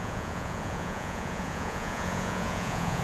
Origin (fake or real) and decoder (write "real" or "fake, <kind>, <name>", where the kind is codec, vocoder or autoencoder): fake, vocoder, Vocos